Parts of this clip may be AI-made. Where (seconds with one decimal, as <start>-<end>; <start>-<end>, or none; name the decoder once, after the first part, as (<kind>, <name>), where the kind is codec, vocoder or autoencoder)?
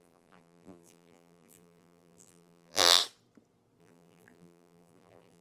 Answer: 0.0-3.0 (vocoder, BigVGAN v2); 3.8-5.4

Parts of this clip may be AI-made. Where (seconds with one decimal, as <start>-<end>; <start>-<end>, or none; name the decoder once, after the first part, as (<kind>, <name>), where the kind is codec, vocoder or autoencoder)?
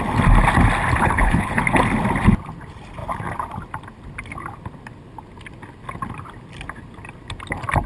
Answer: 1.0-1.6 (codec, HILCodec)